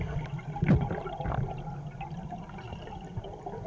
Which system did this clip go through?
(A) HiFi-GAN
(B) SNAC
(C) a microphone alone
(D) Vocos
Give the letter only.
C